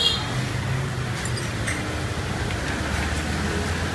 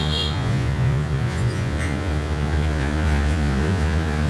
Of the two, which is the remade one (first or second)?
second